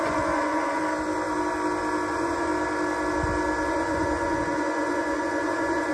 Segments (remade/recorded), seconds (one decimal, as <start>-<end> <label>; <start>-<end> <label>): 0.0-0.8 remade; 0.8-2.1 recorded; 2.1-2.5 remade; 2.5-3.7 recorded; 3.7-5.9 remade